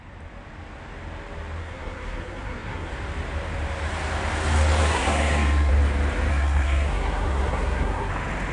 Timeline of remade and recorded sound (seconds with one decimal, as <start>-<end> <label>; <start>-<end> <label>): 0.0-1.6 recorded; 1.6-2.9 remade; 2.9-4.8 recorded; 4.8-5.7 remade; 5.7-6.3 recorded; 6.3-8.1 remade; 8.1-8.5 recorded